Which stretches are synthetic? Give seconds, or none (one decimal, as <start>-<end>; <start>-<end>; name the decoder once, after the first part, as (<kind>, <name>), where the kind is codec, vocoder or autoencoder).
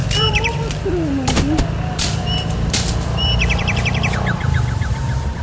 1.9-5.4 (vocoder, BigVGAN v2)